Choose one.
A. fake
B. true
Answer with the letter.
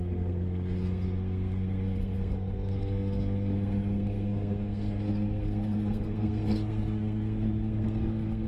A